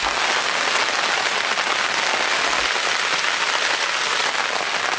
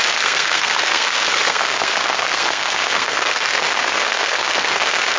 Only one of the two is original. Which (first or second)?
first